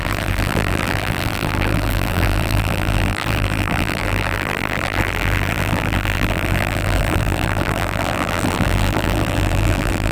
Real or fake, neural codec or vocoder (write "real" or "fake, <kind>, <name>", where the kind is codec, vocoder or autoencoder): fake, vocoder, BigVGAN v2